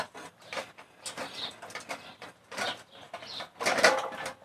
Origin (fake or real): real